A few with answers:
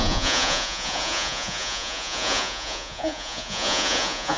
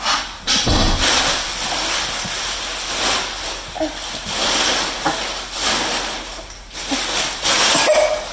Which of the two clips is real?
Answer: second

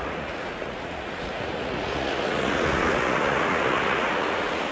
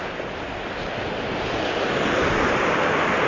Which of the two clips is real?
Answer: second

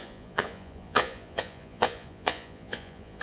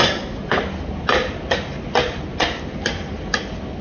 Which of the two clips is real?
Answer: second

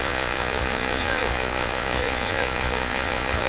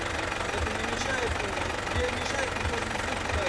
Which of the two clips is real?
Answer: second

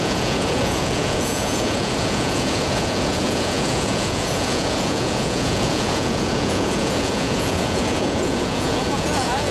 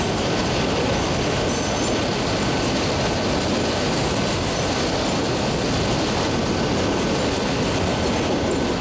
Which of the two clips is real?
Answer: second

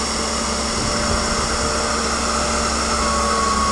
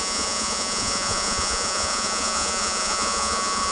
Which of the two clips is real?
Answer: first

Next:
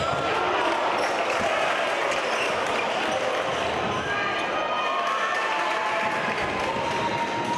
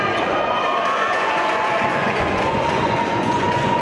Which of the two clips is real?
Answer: first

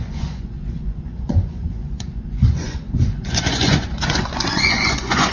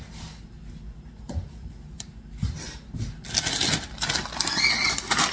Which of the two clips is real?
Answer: second